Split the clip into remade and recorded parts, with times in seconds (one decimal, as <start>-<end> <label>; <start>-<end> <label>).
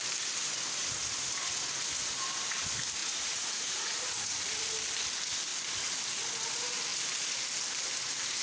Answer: 0.0-3.0 recorded; 3.0-4.4 remade; 4.4-8.4 recorded